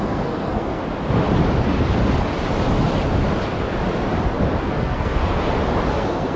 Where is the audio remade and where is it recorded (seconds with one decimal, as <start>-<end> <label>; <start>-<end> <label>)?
0.0-0.8 remade; 0.8-4.6 recorded; 4.6-5.2 remade; 5.2-5.9 recorded; 5.9-6.4 remade